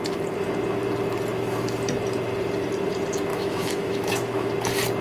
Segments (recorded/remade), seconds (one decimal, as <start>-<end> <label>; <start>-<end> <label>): 0.0-3.3 recorded; 3.3-4.5 remade; 4.5-5.0 recorded